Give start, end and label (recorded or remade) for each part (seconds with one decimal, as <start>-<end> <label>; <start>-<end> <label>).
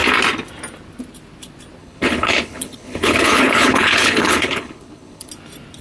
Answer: 0.0-1.8 recorded; 1.8-5.3 remade; 5.3-5.8 recorded